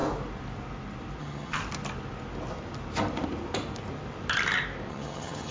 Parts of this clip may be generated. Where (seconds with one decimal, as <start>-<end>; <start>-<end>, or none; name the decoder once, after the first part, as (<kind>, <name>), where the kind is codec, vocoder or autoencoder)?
1.2-1.6 (vocoder, HiFi-GAN); 4.9-5.5